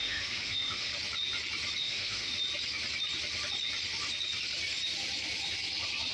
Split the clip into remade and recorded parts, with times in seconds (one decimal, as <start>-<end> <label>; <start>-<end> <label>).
0.0-0.9 remade; 0.9-1.8 recorded; 1.8-2.3 remade; 2.3-6.1 recorded